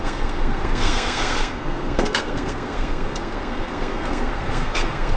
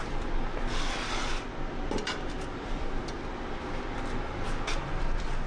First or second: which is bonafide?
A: second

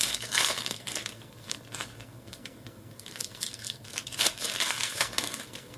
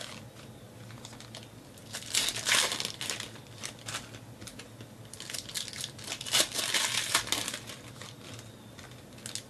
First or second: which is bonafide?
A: second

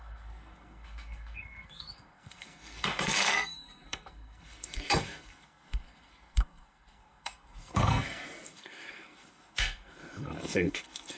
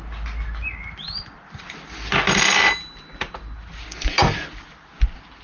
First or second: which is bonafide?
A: second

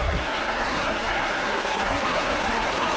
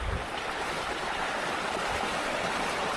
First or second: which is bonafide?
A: second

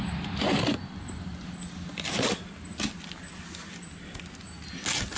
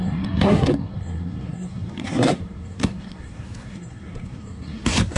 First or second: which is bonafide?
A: first